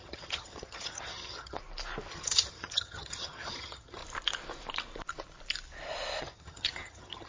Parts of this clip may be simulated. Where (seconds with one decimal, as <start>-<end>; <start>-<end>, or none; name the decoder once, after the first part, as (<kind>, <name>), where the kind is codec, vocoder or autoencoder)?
0.0-1.6 (vocoder, HiFi-GAN); 2.1-4.0; 6.2-7.3